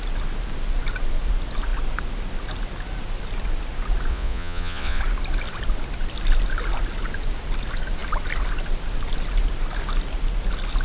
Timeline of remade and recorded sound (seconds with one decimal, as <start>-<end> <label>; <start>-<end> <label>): 0.0-4.1 recorded; 4.1-5.0 remade; 5.0-10.8 recorded